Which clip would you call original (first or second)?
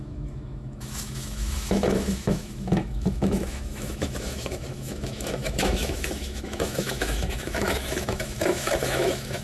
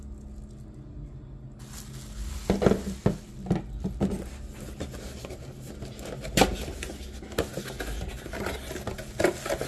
second